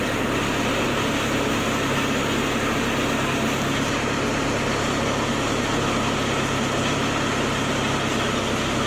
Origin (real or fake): real